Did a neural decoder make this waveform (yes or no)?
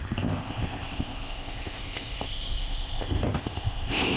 yes